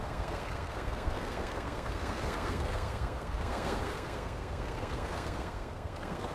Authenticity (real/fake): fake